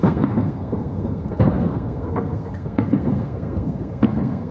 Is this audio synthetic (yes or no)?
yes